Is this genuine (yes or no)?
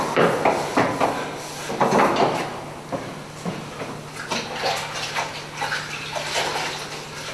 yes